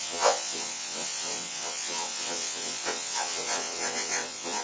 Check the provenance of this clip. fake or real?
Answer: fake